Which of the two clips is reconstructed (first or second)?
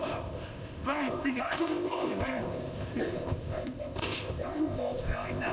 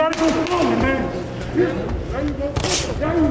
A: first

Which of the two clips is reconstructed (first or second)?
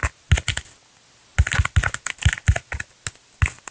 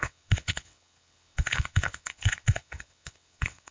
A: second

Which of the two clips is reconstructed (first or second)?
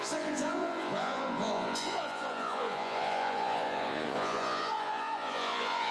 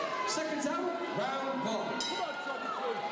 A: first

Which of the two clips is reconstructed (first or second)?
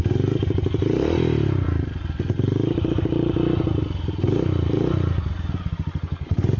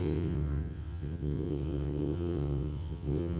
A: second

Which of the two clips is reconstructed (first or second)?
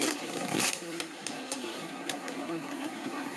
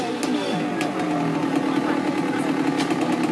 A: first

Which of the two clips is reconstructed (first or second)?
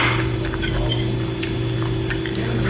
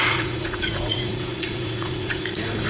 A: second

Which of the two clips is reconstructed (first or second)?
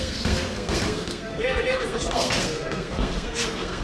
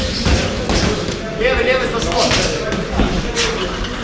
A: first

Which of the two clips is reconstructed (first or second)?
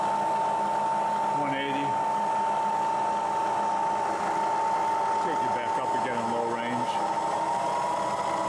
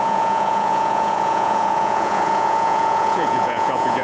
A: second